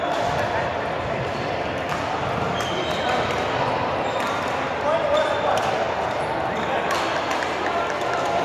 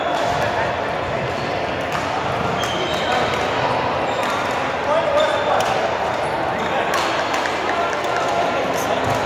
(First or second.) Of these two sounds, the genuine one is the second